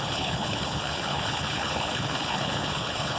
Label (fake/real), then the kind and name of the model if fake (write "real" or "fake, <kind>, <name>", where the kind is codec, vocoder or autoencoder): fake, codec, HILCodec